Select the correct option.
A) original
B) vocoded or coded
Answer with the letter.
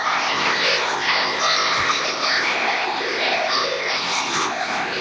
B